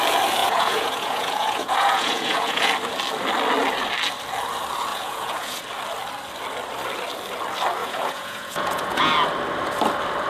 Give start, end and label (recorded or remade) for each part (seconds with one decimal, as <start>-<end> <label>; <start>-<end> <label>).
0.0-0.4 recorded; 0.4-2.7 remade; 2.7-4.9 recorded; 4.9-5.6 remade; 5.6-7.8 recorded; 7.8-9.1 remade; 9.1-10.3 recorded